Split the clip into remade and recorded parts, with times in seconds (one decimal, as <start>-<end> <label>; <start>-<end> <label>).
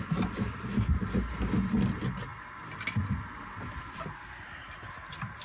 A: 0.0-5.4 recorded